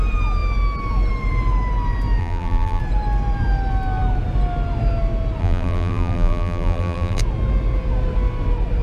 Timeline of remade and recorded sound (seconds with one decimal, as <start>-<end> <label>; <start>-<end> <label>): 0.0-2.2 recorded; 2.2-2.8 remade; 2.8-5.4 recorded; 5.4-7.2 remade; 7.2-8.8 recorded